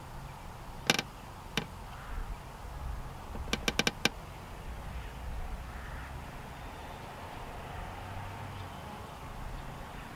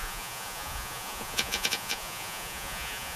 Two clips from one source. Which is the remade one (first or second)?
second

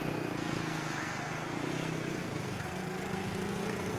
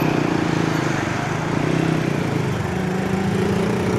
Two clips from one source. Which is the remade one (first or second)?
first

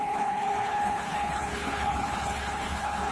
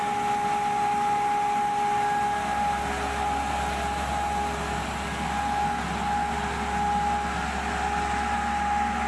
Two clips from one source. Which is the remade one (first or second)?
first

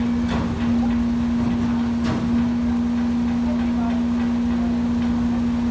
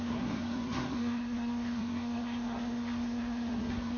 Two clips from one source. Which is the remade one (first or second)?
second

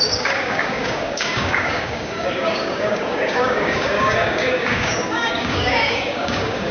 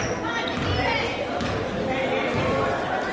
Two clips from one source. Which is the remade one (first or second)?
first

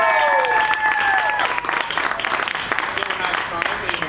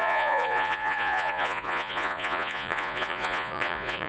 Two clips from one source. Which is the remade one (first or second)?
second